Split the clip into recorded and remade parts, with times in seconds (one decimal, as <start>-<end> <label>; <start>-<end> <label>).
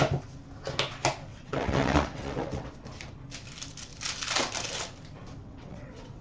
0.0-1.3 recorded; 1.3-2.7 remade; 2.7-5.4 recorded; 5.4-6.2 remade